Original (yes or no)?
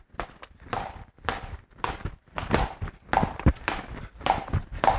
yes